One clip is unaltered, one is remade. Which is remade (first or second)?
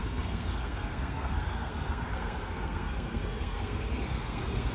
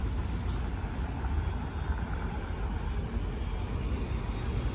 first